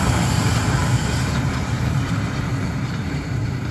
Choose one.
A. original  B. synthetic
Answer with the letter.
B